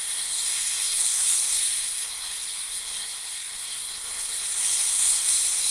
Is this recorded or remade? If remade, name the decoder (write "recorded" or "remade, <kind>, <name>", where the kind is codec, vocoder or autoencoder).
remade, codec, SNAC